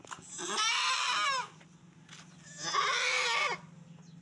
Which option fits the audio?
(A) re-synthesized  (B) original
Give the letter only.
B